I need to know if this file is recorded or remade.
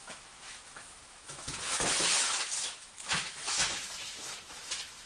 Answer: remade